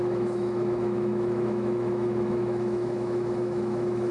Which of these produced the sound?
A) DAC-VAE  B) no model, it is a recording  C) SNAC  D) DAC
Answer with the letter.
A